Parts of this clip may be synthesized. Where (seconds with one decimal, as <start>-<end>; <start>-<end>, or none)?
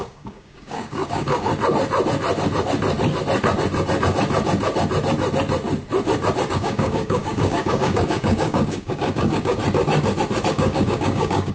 0.0-1.5; 6.5-9.6; 10.5-11.5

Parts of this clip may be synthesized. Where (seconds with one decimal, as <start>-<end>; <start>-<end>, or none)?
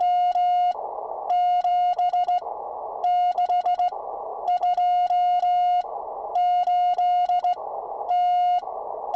none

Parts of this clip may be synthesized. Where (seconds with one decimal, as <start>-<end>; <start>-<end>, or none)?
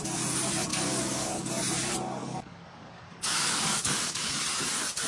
0.7-1.5; 2.2-4.3